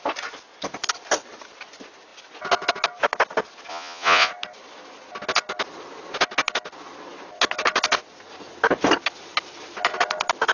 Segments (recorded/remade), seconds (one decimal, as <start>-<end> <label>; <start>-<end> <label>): 0.0-3.7 recorded; 3.7-4.3 remade; 4.3-10.5 recorded